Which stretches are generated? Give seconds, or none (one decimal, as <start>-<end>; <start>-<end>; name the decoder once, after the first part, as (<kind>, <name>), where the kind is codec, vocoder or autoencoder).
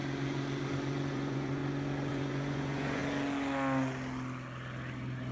1.1-1.6 (vocoder, Vocos); 2.1-3.0